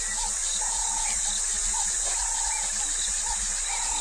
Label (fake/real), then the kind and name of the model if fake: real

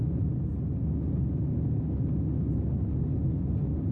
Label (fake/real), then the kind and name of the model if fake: real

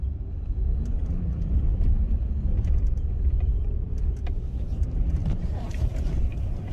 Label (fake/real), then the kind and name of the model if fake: fake, vocoder, BigVGAN v2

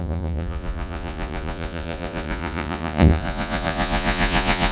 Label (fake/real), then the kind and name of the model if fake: fake, vocoder, Vocos